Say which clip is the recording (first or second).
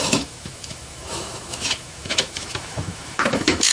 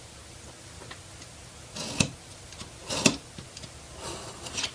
second